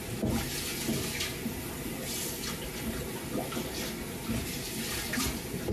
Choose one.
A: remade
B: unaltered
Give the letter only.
B